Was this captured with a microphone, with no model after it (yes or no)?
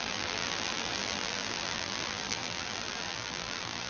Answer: no